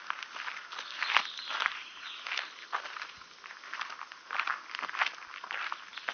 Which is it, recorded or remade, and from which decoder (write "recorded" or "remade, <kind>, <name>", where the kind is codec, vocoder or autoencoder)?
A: recorded